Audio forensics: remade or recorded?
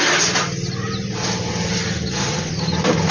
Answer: recorded